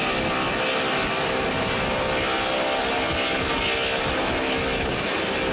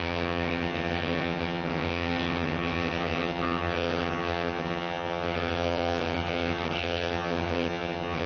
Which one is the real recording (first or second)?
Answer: first